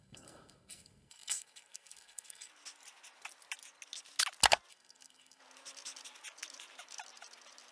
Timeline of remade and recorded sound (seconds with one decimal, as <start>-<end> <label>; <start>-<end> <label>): 0.0-2.5 remade; 2.5-4.7 recorded; 4.7-5.4 remade; 5.4-7.7 recorded